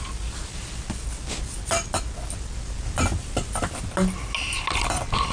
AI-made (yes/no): no